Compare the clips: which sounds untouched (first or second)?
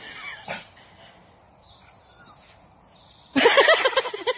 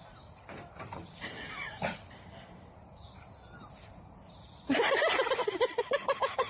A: first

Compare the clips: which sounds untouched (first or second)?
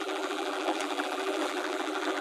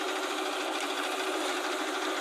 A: second